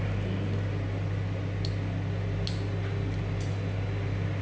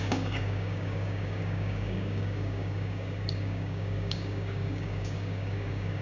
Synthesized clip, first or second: second